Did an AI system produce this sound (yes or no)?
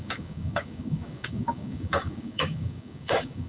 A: yes